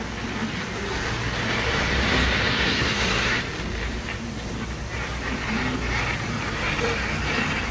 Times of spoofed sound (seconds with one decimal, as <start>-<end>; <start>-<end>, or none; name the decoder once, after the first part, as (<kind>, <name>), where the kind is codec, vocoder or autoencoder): 2.5-3.4 (codec, SNAC)